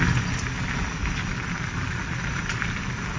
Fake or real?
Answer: real